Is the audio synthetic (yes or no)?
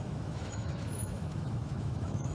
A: yes